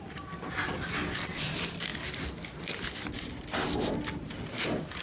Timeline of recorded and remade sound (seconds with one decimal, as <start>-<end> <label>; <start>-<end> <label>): 0.0-5.0 recorded

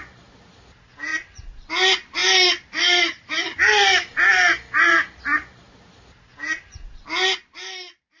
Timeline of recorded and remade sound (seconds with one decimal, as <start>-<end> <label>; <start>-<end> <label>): 0.0-8.2 recorded

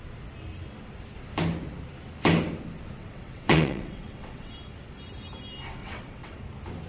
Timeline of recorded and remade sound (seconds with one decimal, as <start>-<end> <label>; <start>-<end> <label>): 0.0-3.0 recorded; 3.0-4.5 remade; 4.5-5.8 recorded; 5.8-6.4 remade; 6.4-6.9 recorded